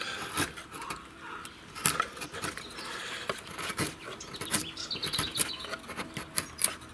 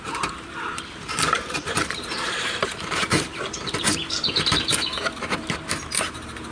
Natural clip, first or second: first